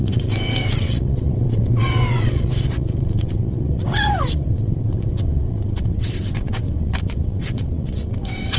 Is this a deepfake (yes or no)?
yes